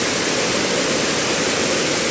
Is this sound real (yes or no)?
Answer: yes